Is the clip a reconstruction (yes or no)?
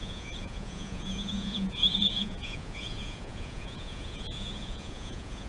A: yes